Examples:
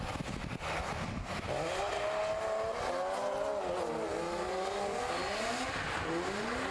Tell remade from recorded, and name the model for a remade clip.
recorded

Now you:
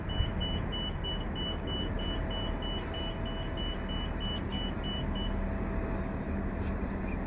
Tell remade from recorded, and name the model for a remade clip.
recorded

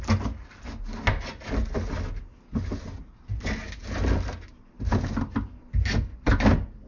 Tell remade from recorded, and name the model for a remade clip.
recorded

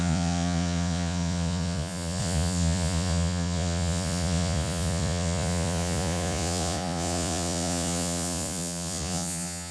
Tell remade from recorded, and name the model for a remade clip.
remade, vocoder, Vocos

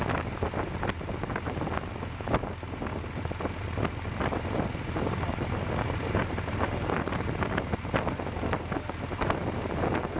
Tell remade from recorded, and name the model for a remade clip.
recorded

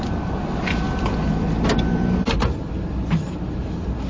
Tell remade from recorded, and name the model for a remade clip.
recorded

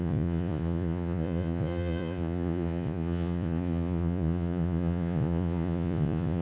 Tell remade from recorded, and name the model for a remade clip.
remade, vocoder, Vocos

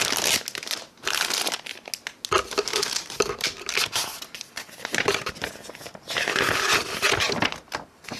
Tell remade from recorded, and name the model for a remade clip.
recorded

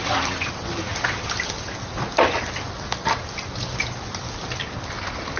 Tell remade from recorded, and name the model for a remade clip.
recorded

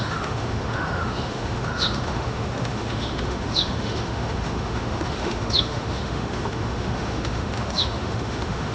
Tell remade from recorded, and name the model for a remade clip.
remade, autoencoder, DAC-VAE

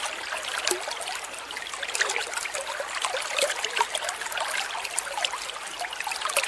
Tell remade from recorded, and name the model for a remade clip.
recorded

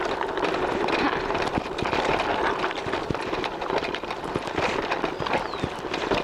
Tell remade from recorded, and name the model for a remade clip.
recorded